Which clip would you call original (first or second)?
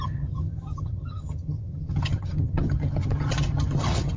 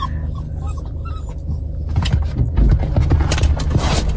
second